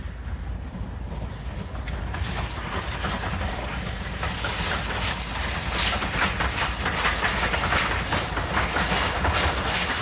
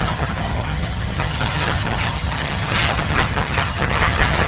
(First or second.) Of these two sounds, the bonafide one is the first